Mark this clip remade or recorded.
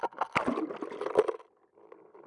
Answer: recorded